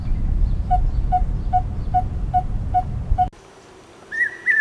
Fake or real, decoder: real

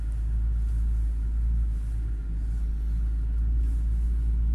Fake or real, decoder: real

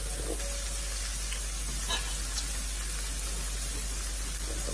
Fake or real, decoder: real